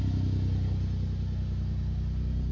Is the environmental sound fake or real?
real